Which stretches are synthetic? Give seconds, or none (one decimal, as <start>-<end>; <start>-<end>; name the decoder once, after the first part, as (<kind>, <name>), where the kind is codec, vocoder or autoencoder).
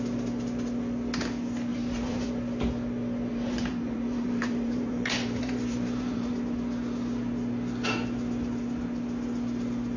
1.7-2.3 (vocoder, BigVGAN v2); 3.3-6.3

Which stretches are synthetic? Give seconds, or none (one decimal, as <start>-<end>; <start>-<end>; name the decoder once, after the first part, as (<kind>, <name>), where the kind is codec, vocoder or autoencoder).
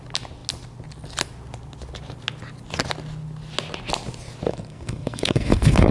4.5-5.9 (codec, SNAC)